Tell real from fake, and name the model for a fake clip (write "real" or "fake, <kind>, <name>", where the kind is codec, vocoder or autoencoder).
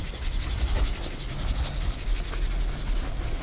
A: real